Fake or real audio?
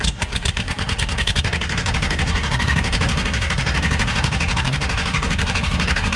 fake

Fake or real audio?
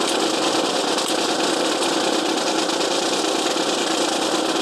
real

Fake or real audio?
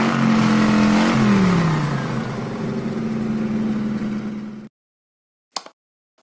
real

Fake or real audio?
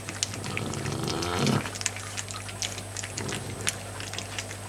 real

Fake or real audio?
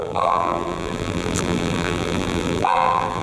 fake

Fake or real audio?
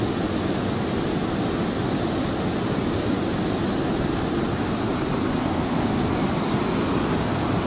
real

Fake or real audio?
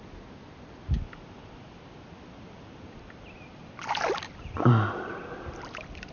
real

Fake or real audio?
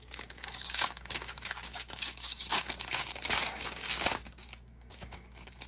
fake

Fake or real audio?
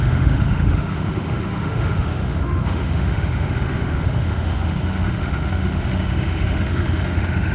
fake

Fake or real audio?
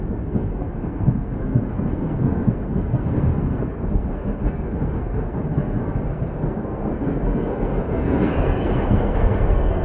fake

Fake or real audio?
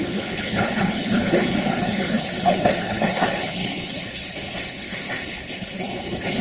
fake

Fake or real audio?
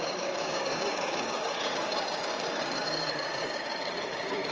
fake